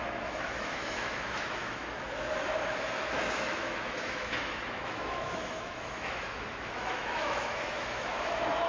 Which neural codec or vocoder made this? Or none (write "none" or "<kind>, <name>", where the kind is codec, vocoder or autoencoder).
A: autoencoder, DAC-VAE